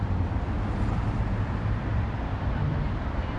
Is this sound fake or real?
fake